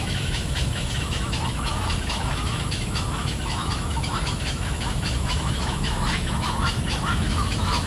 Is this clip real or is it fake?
fake